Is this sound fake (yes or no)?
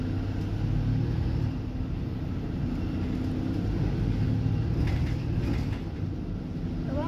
no